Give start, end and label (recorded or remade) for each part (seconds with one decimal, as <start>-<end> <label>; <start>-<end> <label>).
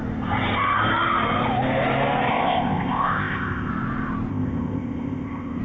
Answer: 0.0-2.3 recorded; 2.3-3.7 remade; 3.7-4.3 recorded; 4.3-5.6 remade